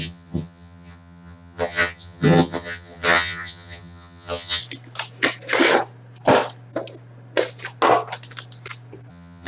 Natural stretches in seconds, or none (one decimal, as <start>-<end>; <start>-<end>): 4.6-9.1